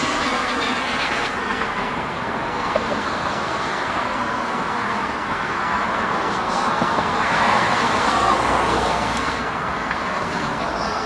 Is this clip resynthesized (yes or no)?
yes